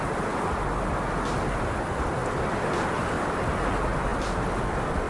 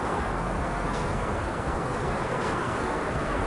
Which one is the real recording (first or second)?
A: first